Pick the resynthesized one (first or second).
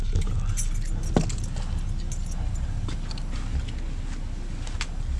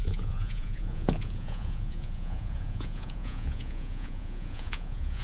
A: second